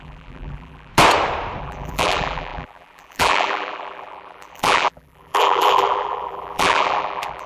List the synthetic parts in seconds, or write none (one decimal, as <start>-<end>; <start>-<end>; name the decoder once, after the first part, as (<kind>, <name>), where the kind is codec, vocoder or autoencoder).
0.0-0.9 (vocoder, BigVGAN v2); 1.6-7.5